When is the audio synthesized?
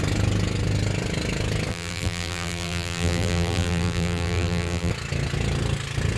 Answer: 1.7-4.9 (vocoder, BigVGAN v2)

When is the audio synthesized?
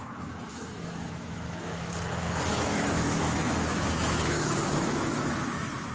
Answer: 0.0-1.9 (autoencoder, DAC-VAE); 2.5-5.9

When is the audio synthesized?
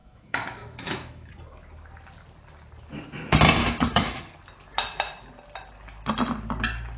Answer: 0.0-1.3 (autoencoder, DAC-VAE); 3.6-4.2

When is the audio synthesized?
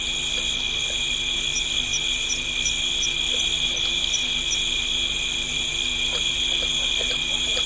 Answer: none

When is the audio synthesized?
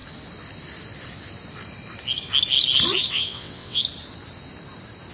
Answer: 3.1-3.8 (vocoder, WaveNeXt)